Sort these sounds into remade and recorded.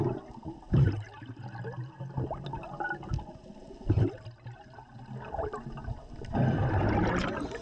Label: recorded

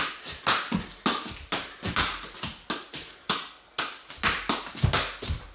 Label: recorded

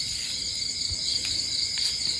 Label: recorded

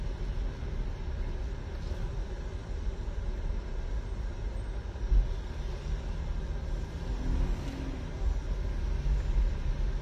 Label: recorded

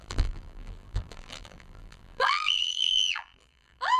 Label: remade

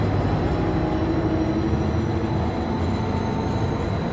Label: recorded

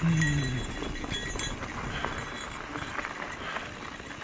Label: recorded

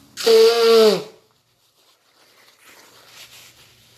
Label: recorded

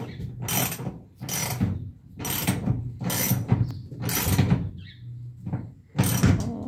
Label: recorded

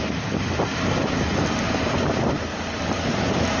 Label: recorded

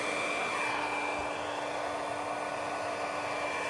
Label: recorded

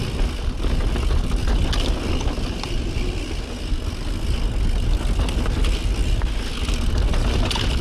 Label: recorded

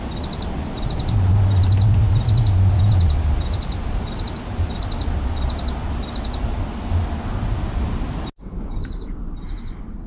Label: recorded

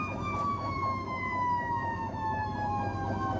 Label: remade